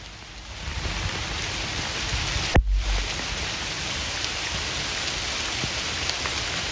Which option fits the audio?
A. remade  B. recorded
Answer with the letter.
B